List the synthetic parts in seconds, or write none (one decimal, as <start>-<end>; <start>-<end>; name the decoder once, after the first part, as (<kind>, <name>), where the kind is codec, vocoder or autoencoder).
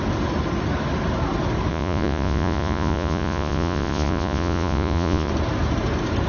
1.7-5.3 (vocoder, Vocos)